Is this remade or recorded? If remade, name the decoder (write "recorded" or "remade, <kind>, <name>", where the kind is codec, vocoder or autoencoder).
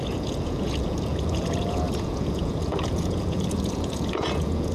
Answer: remade, vocoder, Vocos